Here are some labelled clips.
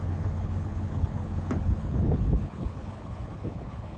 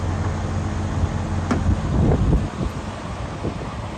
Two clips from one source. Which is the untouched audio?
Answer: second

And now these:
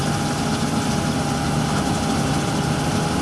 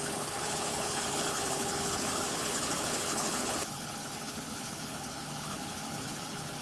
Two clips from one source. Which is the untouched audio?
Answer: first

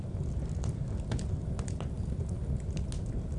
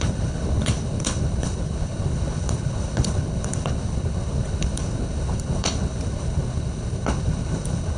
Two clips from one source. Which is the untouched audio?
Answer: first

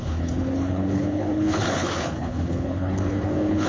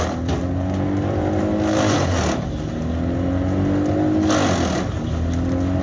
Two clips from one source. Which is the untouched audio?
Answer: second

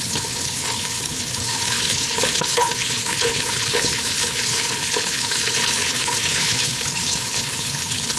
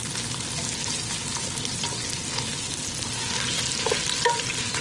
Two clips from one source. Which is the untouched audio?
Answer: second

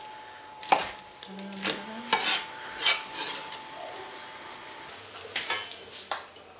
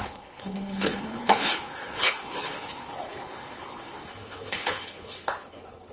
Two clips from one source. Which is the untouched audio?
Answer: first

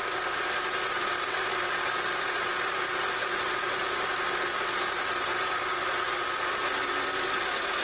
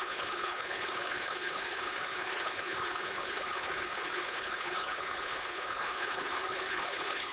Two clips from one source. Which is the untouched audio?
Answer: first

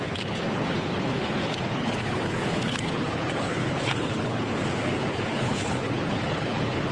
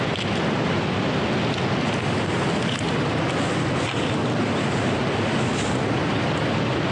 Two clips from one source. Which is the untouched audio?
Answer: second